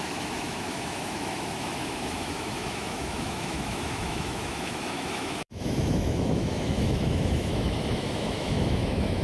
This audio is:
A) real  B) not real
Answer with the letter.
B